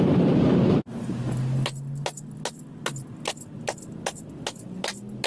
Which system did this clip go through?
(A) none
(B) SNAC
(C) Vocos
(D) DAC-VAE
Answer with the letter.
A